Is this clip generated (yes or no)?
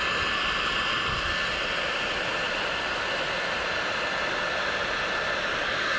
no